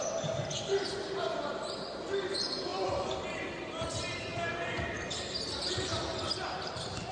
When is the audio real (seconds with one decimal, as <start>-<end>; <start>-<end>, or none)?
0.0-2.7; 3.2-4.3; 5.7-7.1